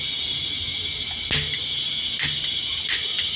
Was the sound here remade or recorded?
recorded